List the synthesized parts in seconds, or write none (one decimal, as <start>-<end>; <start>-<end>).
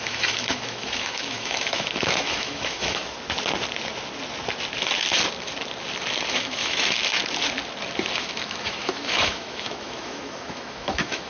0.0-3.0; 6.3-7.2; 8.2-11.3